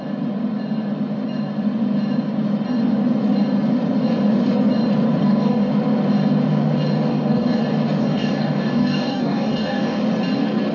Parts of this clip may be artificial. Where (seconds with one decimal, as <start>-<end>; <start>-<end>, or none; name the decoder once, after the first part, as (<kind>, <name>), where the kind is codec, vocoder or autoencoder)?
5.2-5.7 (codec, DAC); 7.1-7.6; 8.0-10.0